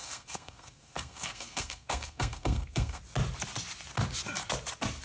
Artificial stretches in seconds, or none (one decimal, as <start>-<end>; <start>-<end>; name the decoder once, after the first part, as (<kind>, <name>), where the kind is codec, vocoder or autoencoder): 0.0-3.0 (codec, SNAC)